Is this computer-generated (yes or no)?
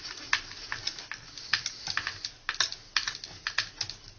no